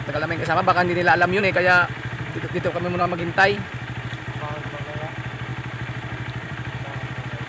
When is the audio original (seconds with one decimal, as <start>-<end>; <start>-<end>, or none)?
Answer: 0.0-3.0; 3.7-5.5; 6.8-7.5